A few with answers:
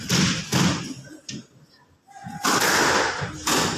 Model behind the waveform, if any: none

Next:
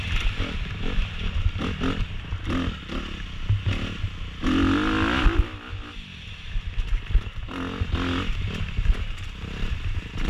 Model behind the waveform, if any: none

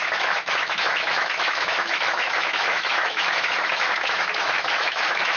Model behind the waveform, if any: autoencoder, DAC-VAE